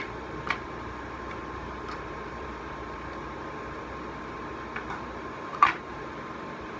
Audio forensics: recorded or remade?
remade